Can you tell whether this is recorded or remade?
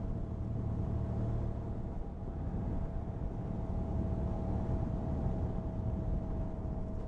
recorded